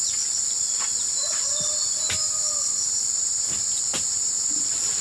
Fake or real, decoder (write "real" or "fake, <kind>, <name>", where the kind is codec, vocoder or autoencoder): real